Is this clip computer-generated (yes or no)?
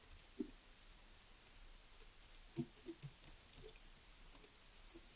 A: no